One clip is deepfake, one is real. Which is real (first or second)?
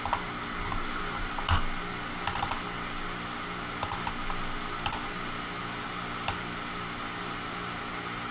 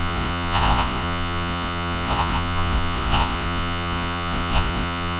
first